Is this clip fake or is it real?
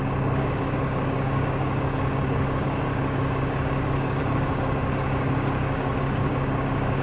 fake